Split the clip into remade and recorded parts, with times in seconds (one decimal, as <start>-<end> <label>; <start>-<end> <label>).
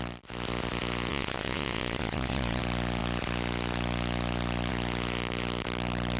0.0-1.1 recorded; 1.1-2.6 remade; 2.6-6.2 recorded